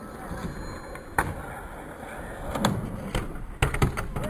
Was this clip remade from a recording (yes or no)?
no